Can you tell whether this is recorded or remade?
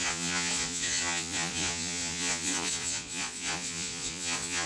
remade